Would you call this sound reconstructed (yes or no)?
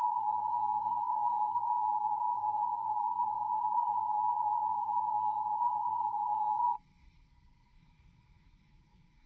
yes